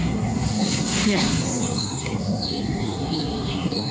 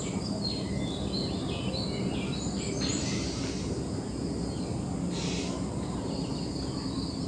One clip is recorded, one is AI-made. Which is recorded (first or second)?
second